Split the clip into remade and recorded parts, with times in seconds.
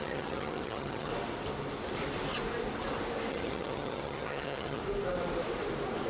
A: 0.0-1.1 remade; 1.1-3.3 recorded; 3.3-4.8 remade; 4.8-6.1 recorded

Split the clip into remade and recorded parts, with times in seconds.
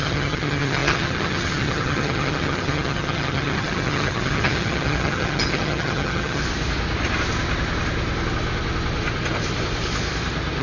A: 0.0-6.4 remade; 6.4-10.6 recorded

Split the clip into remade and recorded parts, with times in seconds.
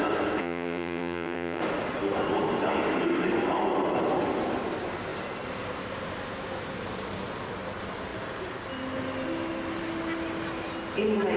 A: 0.0-0.4 recorded; 0.4-1.6 remade; 1.6-11.4 recorded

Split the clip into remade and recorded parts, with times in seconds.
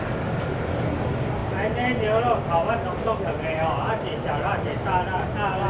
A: 0.0-5.7 recorded